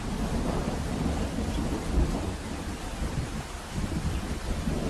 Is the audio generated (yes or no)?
no